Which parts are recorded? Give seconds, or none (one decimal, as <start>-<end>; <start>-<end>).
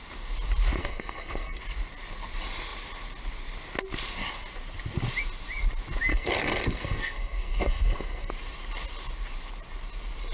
0.0-0.8; 1.6-6.1; 8.3-10.3